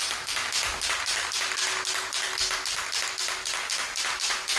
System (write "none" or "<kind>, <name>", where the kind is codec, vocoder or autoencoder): none